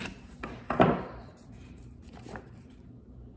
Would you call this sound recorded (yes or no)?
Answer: no